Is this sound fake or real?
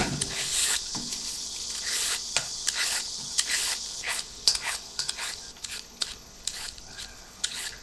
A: fake